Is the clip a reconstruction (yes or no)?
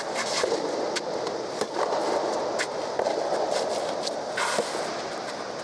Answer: no